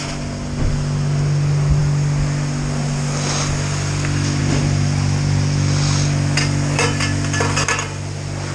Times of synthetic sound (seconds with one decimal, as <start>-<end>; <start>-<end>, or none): none